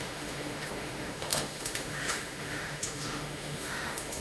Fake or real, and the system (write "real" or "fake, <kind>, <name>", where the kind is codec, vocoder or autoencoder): fake, autoencoder, DAC-VAE